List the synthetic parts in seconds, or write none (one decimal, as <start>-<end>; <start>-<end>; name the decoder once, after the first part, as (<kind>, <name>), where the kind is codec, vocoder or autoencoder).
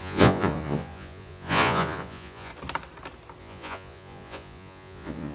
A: 0.0-2.5 (vocoder, Vocos); 3.4-5.3